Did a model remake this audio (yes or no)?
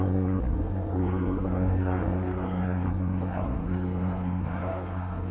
yes